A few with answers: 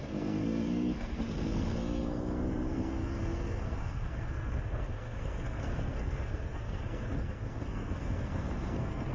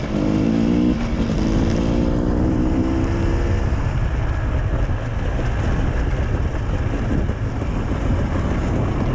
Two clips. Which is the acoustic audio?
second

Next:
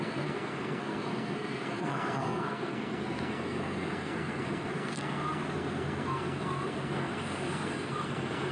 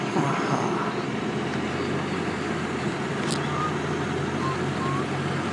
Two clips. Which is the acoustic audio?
second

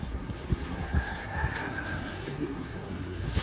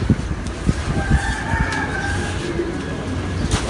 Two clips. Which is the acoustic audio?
second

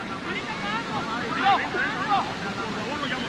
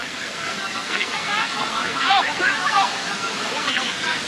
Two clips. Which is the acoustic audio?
first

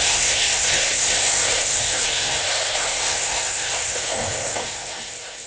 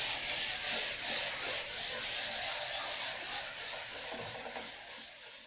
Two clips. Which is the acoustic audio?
second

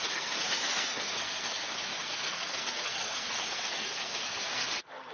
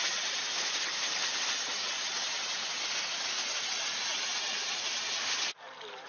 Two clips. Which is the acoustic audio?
second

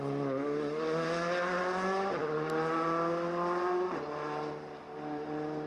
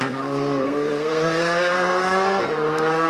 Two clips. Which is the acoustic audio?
first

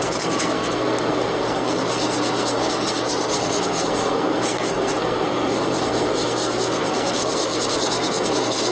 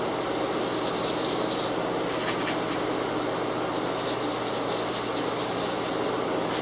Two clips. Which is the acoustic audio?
second